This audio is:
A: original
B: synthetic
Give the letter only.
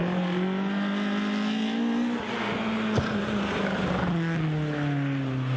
A